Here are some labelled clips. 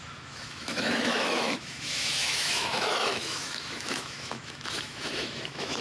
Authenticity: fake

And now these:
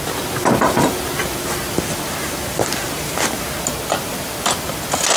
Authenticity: real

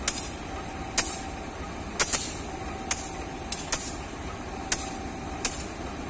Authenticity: real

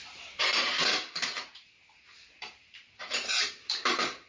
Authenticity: fake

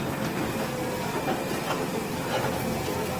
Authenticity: real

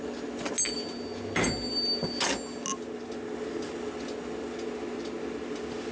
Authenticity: real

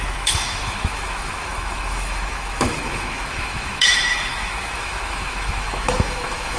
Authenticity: fake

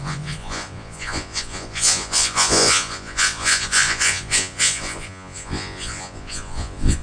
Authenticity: fake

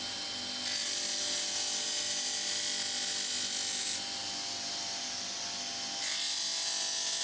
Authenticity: real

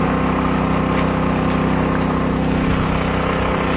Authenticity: real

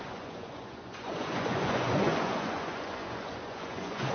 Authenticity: fake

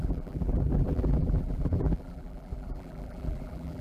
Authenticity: fake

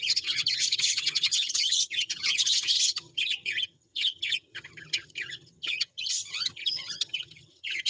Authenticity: fake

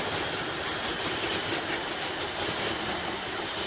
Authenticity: real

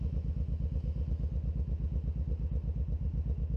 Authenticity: real